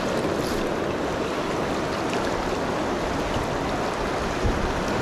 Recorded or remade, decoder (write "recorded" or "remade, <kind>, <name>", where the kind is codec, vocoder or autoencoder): recorded